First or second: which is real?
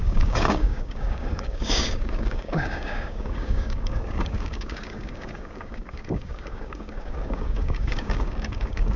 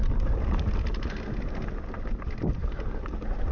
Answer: second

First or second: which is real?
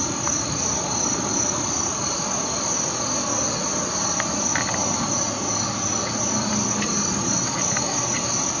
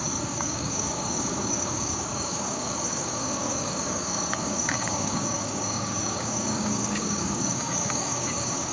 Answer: first